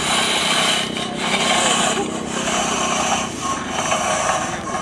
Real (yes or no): yes